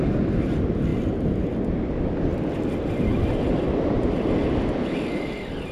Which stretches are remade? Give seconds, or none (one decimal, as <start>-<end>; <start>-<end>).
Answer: none